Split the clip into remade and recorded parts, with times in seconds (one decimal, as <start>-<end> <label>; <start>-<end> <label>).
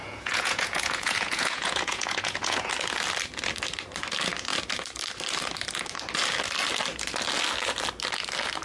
0.0-2.7 remade; 2.7-8.6 recorded